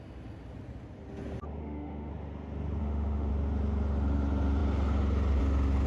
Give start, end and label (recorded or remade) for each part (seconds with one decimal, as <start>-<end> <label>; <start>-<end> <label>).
0.0-1.6 recorded; 1.6-2.1 remade; 2.1-2.8 recorded; 2.8-3.3 remade; 3.3-5.9 recorded